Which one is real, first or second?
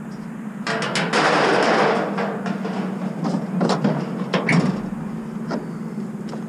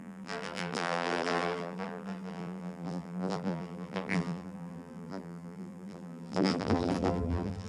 first